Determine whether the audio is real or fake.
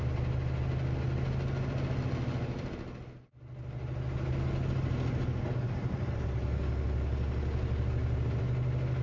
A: real